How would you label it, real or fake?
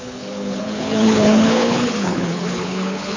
fake